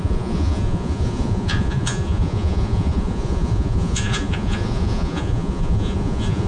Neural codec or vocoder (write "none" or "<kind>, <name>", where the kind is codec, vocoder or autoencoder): vocoder, Vocos